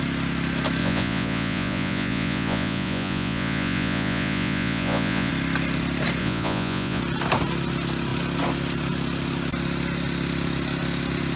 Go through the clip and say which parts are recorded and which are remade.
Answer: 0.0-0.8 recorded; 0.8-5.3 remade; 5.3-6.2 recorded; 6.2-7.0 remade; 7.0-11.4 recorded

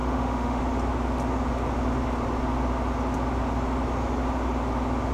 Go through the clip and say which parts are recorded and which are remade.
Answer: 0.0-0.6 remade; 0.6-5.1 recorded

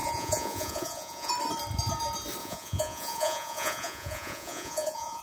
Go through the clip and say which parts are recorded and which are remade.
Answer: 0.0-1.3 remade; 1.3-2.4 recorded; 2.4-5.2 remade

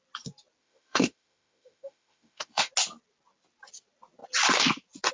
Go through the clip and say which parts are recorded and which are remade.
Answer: 0.0-0.6 recorded; 0.6-2.7 remade; 2.7-5.1 recorded

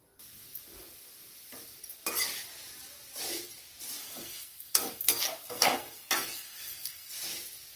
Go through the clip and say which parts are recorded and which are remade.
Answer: 0.0-4.0 recorded; 4.0-7.1 remade; 7.1-7.8 recorded

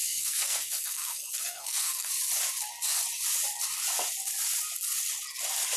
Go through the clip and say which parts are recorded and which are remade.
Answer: 0.0-2.1 remade; 2.1-5.8 recorded

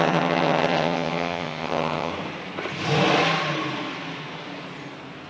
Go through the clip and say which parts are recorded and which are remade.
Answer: 0.0-2.1 remade; 2.1-5.3 recorded

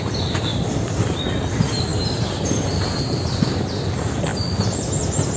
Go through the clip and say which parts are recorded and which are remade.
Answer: 0.0-0.5 recorded; 0.5-1.2 remade; 1.2-1.9 recorded; 1.9-3.5 remade; 3.5-5.4 recorded